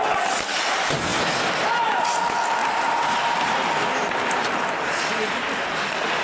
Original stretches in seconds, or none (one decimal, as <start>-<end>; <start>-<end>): 0.0-2.6; 5.0-6.2